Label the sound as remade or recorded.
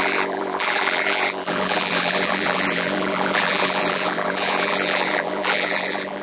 remade